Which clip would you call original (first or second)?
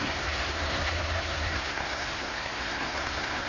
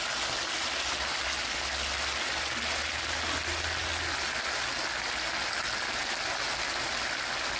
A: second